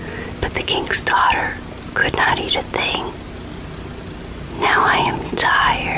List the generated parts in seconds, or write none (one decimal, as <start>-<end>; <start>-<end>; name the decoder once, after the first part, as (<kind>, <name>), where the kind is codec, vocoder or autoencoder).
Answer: none